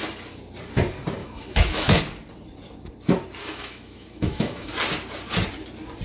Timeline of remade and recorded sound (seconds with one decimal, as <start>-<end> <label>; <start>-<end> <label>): 0.0-1.2 recorded; 1.2-2.0 remade; 2.0-3.4 recorded; 3.4-4.7 remade; 4.7-6.0 recorded